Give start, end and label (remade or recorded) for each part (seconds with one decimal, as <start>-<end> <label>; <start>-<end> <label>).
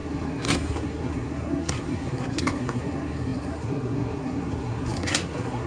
0.0-5.7 remade